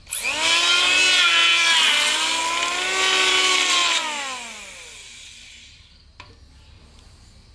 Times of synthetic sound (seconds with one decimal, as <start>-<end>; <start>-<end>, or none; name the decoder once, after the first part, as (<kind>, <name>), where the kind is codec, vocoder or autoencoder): none